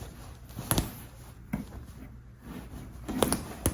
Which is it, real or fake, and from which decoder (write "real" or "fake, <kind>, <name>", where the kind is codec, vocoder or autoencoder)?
real